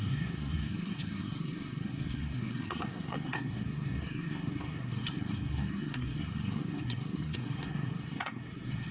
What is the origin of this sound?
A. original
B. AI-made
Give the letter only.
B